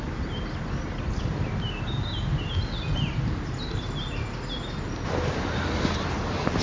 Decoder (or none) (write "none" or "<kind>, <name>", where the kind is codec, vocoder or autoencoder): none